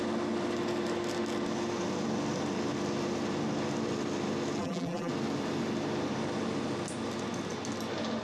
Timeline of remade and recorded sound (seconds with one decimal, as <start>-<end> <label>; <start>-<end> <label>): 0.0-4.6 recorded; 4.6-5.1 remade; 5.1-8.2 recorded